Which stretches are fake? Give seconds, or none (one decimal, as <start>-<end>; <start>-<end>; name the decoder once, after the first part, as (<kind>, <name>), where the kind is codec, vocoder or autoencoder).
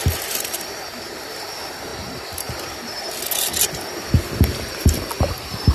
0.0-1.9 (vocoder, BigVGAN v2); 5.3-5.7